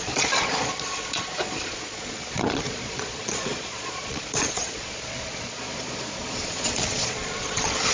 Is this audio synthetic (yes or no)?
yes